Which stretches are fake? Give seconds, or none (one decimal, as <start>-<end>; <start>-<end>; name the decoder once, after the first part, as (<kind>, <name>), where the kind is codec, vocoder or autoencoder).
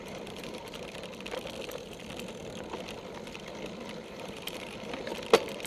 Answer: 0.0-0.6 (vocoder, BigVGAN v2); 4.0-5.1